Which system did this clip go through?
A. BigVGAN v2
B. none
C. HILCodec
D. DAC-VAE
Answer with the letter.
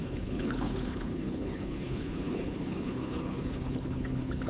C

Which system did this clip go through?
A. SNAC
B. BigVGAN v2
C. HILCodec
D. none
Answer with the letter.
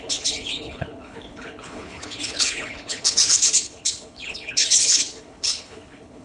C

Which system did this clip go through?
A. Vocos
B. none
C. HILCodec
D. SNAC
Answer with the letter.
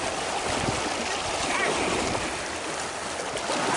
B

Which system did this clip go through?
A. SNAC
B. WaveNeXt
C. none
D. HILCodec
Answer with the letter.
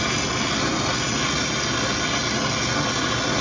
C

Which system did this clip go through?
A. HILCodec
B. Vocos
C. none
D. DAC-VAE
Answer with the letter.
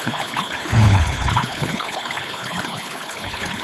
A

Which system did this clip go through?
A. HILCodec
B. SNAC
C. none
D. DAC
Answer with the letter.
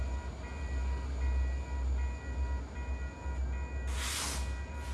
C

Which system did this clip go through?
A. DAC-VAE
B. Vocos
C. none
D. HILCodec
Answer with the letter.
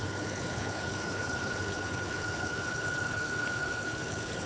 D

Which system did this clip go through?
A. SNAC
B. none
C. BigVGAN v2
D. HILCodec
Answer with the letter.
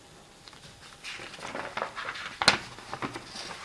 B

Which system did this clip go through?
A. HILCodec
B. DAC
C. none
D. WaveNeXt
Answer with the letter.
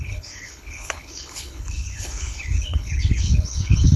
A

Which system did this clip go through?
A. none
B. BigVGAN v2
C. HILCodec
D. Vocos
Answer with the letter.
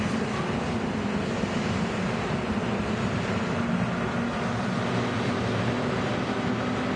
A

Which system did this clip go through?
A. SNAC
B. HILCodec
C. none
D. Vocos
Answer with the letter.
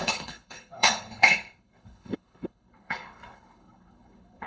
B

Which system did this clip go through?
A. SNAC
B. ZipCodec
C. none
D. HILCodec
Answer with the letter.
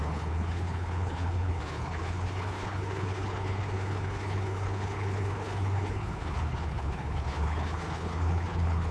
D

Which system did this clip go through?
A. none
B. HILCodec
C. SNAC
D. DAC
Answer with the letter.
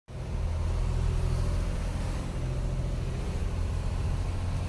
A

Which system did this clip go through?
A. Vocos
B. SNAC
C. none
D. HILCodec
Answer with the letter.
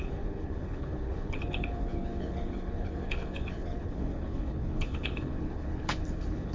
D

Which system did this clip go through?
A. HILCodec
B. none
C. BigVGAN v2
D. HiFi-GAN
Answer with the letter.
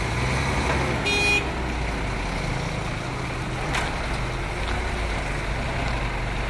B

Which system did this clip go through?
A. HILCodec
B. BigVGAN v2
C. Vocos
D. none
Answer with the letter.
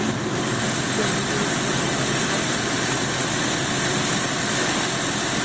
D